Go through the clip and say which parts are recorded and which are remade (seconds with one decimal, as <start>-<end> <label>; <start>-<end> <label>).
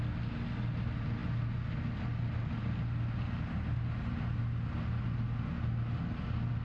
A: 0.0-6.6 recorded